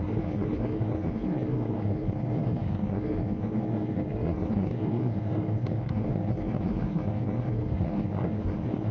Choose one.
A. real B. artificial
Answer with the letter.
B